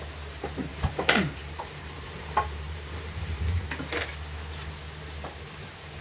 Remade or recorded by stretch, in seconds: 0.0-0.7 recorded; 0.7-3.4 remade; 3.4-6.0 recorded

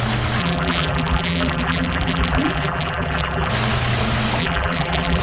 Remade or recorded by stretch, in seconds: 0.0-0.4 recorded; 0.4-3.5 remade; 3.5-4.4 recorded; 4.4-5.2 remade

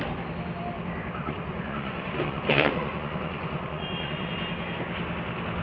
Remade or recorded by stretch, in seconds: 0.0-1.2 recorded; 1.2-4.3 remade; 4.3-5.6 recorded

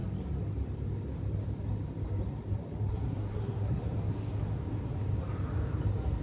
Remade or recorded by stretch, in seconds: 0.0-2.9 recorded; 2.9-3.8 remade; 3.8-6.2 recorded

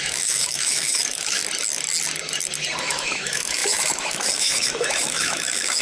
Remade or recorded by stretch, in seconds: 0.0-1.4 remade; 1.4-2.8 recorded; 2.8-5.8 remade

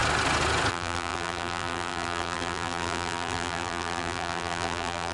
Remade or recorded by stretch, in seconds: 0.0-0.7 recorded; 0.7-5.1 remade

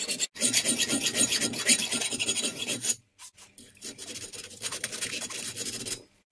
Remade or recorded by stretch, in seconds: 0.0-6.3 recorded